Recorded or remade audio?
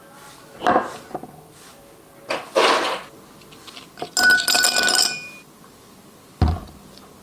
recorded